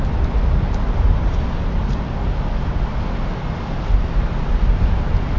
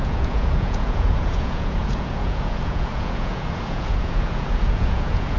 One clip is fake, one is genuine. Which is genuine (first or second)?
first